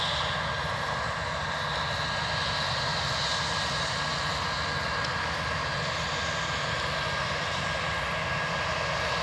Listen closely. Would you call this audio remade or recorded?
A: recorded